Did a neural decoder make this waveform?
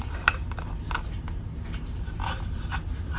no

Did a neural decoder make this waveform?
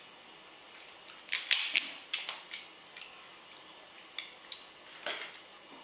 no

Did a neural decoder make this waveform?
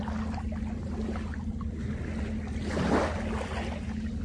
no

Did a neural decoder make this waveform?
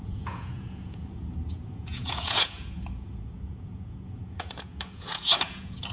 yes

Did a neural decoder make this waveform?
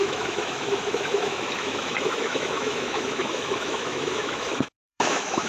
yes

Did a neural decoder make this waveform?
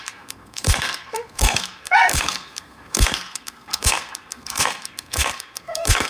yes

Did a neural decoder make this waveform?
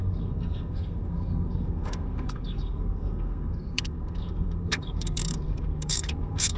yes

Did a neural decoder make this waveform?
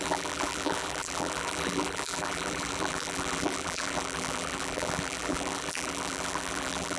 yes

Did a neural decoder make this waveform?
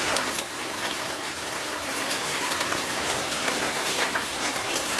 yes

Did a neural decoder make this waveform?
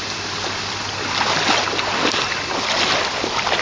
no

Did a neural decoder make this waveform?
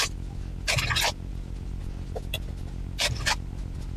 no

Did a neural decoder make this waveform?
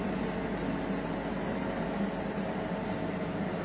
no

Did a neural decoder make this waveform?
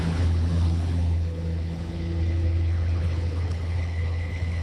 yes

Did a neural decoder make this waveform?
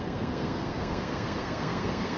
yes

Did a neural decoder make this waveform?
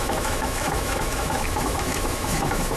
yes